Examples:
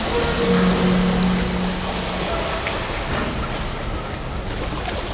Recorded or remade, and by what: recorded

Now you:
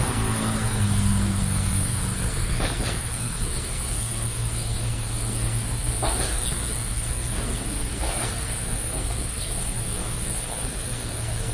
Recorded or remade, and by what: remade, codec, SNAC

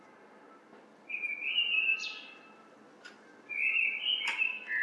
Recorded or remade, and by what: recorded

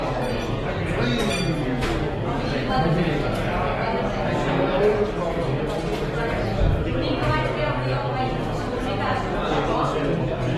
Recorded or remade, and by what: recorded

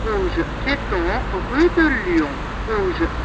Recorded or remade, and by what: recorded